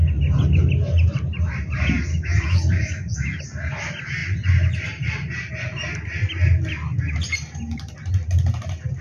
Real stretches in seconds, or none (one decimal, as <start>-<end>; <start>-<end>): 0.0-2.1; 3.4-9.0